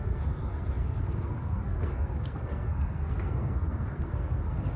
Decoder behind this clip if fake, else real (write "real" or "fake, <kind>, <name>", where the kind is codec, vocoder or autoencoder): fake, codec, SNAC